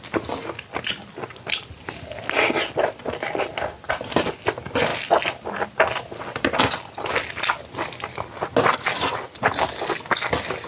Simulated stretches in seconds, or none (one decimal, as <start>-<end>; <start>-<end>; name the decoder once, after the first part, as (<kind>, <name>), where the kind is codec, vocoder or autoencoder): none